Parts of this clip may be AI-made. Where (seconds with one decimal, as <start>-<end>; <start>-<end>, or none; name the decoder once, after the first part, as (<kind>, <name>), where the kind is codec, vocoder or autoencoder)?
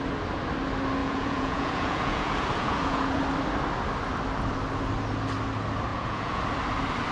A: 1.0-3.2 (vocoder, Vocos); 5.9-6.4